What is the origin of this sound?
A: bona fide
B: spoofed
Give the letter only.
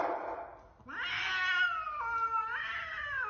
A